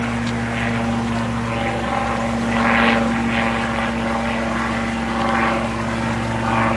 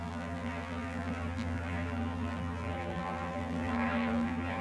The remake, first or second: second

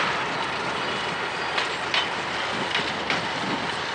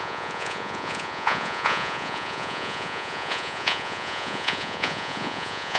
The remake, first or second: second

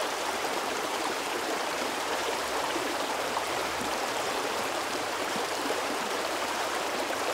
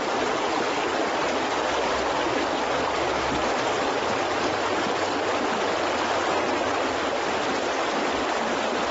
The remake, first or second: first